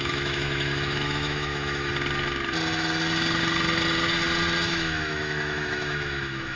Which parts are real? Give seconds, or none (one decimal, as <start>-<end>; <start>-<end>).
1.9-4.7